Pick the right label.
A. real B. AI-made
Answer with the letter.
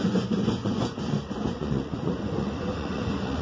B